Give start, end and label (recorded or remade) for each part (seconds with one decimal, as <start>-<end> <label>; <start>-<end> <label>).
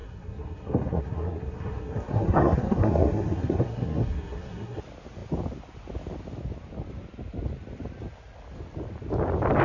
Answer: 0.0-4.8 remade; 4.8-9.6 recorded